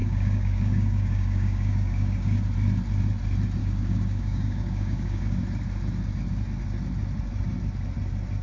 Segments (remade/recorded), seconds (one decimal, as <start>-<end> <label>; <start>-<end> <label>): 0.0-2.4 remade; 2.4-3.6 recorded; 3.6-5.4 remade; 5.4-8.4 recorded